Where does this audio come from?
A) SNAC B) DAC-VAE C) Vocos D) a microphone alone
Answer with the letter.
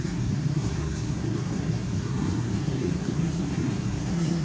A